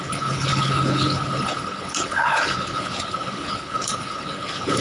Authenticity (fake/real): fake